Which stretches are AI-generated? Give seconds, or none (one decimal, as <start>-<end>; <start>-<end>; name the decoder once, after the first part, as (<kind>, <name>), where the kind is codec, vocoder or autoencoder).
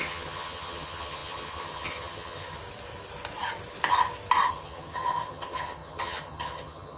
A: 0.0-2.6 (vocoder, HiFi-GAN); 4.5-7.0